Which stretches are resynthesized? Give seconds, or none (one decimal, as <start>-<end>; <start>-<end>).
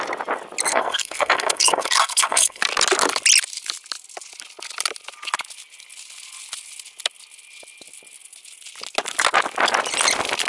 0.7-2.6